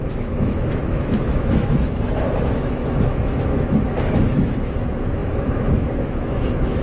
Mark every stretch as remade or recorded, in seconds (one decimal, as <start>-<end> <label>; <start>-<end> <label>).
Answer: 0.0-6.8 remade